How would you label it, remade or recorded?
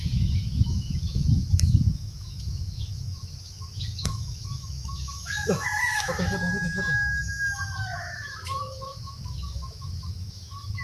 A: remade